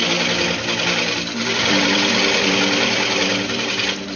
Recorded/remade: remade